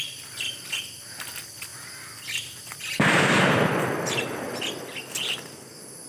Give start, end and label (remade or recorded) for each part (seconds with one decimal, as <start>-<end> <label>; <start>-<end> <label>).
0.0-6.1 recorded